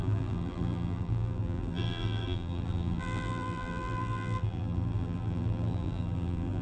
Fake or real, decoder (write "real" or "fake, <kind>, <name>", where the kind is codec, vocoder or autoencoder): fake, vocoder, BigVGAN v2